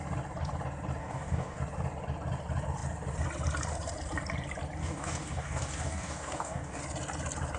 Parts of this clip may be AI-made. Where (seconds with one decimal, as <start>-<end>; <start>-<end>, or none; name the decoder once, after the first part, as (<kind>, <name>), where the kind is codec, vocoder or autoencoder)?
1.0-1.6 (codec, DAC); 4.8-6.8